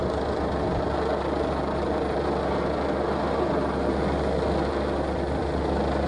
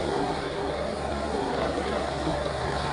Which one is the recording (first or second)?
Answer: first